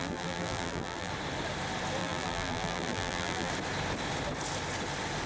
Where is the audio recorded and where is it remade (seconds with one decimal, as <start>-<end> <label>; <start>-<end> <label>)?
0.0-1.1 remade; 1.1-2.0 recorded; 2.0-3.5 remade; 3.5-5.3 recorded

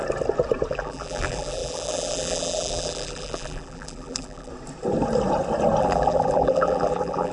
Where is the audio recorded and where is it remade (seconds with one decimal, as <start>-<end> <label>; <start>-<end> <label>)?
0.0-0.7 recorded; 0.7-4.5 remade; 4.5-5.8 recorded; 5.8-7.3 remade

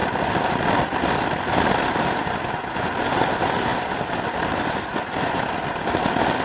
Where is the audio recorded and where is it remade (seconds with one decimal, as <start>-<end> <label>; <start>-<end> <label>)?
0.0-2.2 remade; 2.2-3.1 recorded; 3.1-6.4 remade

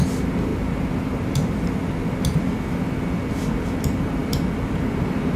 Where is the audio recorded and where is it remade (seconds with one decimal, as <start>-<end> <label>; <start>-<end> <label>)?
0.0-5.4 recorded

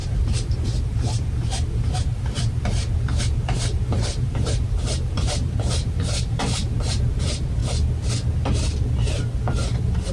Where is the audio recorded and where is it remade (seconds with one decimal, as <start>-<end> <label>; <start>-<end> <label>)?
0.0-7.6 remade; 7.6-10.1 recorded

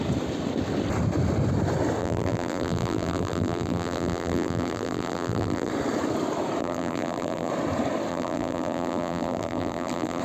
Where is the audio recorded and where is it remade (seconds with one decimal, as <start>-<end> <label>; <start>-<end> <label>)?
0.0-2.0 recorded; 2.0-5.7 remade; 5.7-6.6 recorded; 6.6-7.5 remade; 7.5-8.1 recorded; 8.1-10.2 remade

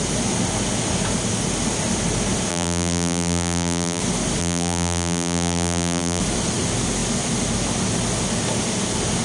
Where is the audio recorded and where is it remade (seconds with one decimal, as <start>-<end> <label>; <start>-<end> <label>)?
0.0-2.5 recorded; 2.5-4.0 remade; 4.0-4.4 recorded; 4.4-6.2 remade; 6.2-9.2 recorded